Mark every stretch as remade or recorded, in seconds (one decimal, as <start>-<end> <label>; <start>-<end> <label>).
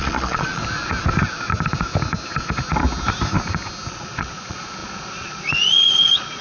0.0-0.6 remade; 0.6-3.9 recorded; 3.9-6.4 remade